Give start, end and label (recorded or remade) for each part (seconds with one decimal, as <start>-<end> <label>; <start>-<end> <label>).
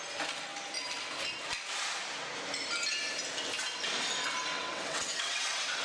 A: 0.0-4.5 recorded; 4.5-5.8 remade